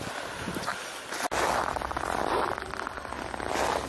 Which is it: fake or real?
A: real